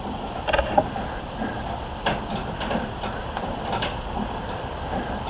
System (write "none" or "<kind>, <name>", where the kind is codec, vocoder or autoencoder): none